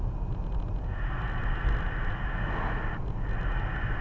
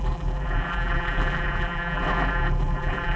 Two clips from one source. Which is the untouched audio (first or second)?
first